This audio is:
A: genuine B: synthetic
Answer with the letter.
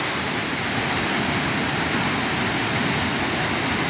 A